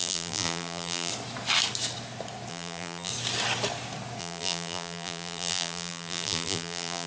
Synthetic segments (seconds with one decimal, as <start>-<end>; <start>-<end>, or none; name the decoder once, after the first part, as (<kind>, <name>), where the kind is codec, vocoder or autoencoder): 0.0-1.1 (vocoder, BigVGAN v2); 2.5-3.1; 4.2-7.1